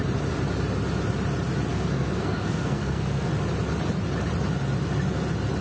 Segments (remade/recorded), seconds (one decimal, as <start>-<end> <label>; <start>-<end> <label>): 0.0-1.7 recorded; 1.7-3.3 remade; 3.3-5.6 recorded